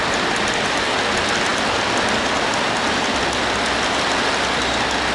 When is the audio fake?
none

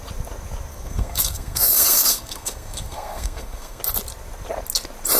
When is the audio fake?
0.7-3.8

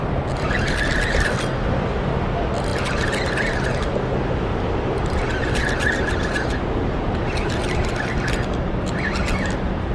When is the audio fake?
none

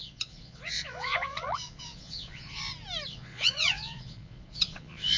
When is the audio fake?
0.0-2.6; 3.1-5.2

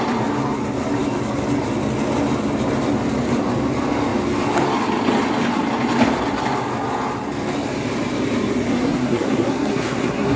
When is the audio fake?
8.7-10.4

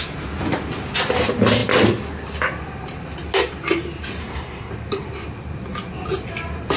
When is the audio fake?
4.2-4.7

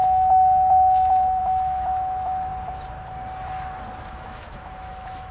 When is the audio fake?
0.0-2.5; 4.0-5.3